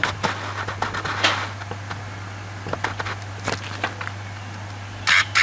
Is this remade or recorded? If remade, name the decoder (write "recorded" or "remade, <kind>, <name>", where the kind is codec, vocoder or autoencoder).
recorded